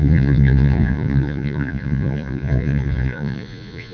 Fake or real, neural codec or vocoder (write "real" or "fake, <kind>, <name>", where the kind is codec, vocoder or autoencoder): fake, vocoder, Vocos